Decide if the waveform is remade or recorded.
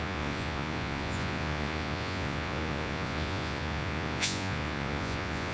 remade